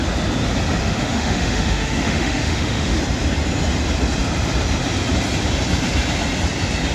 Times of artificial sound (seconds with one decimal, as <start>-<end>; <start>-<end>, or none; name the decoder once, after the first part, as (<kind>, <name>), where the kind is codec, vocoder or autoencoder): 0.8-3.0 (autoencoder, DAC-VAE)